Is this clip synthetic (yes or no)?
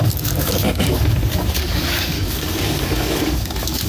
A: yes